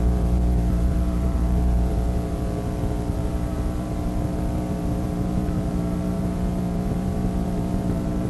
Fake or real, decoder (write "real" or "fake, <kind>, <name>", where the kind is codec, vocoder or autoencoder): fake, vocoder, BigVGAN v2